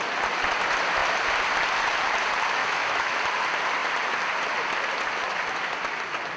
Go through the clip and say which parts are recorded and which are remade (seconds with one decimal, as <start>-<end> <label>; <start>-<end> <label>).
0.0-2.6 recorded; 2.6-3.2 remade; 3.2-6.4 recorded